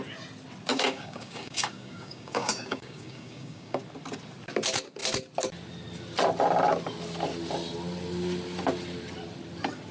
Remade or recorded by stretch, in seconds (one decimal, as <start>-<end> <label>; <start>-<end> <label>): 0.0-0.7 recorded; 0.7-3.8 remade; 3.8-9.9 recorded